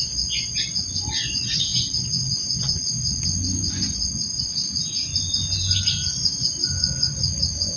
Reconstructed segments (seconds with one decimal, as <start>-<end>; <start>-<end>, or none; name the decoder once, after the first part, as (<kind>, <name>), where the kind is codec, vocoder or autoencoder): 0.0-7.8 (vocoder, Vocos)